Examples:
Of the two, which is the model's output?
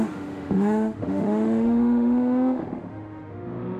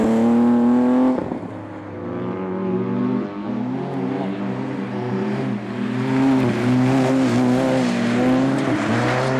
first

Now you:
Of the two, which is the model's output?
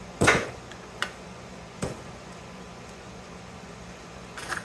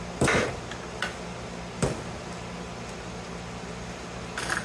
first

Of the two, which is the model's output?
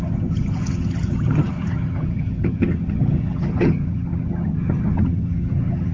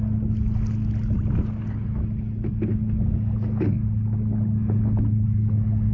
first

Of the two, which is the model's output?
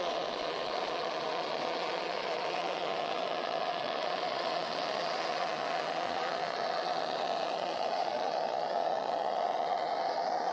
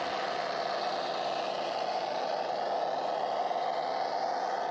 first